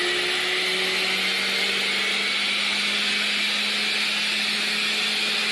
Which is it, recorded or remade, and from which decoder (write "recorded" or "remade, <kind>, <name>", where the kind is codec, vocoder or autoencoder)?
recorded